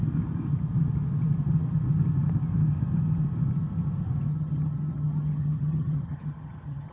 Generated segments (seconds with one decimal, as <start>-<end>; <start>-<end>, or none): 4.3-6.9